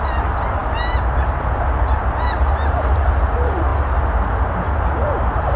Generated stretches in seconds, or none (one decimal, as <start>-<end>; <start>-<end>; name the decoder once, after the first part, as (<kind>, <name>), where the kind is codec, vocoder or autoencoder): none

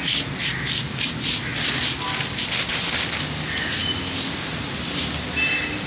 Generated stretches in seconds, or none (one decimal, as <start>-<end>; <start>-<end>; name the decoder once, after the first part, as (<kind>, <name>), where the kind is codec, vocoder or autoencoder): none

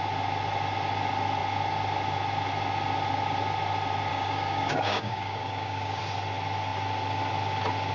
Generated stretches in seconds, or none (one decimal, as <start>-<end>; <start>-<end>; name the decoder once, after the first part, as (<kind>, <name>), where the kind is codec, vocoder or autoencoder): 4.1-6.0 (codec, DAC)

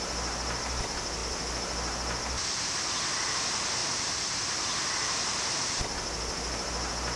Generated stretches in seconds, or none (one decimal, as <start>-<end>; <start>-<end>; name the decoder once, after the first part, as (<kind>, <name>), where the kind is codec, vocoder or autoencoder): none